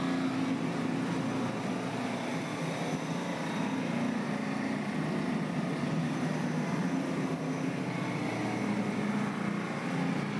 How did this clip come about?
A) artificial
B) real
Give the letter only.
B